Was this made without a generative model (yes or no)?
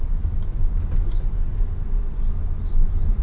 yes